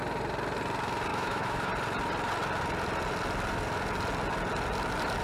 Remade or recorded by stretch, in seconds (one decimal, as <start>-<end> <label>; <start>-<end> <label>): 0.0-1.1 recorded; 1.1-1.7 remade; 1.7-5.2 recorded